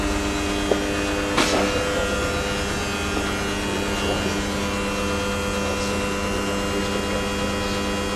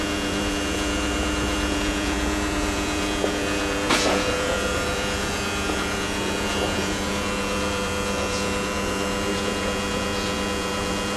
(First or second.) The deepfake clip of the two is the second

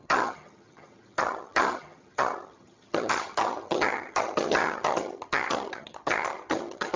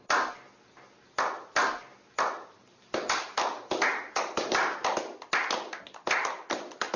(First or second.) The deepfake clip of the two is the first